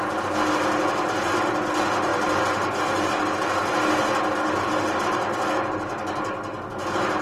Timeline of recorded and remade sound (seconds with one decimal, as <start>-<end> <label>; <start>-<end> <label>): 0.0-7.2 recorded